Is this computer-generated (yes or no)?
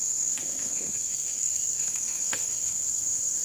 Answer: yes